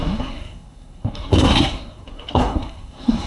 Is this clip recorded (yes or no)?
no